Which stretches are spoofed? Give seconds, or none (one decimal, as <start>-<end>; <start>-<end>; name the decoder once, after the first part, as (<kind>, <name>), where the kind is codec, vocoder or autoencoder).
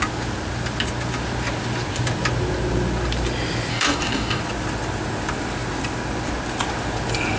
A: 3.7-4.4 (codec, DAC)